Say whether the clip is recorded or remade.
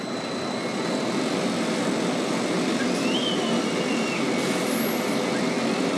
recorded